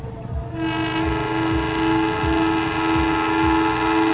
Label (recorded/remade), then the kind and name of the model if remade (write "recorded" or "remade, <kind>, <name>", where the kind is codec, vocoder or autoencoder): recorded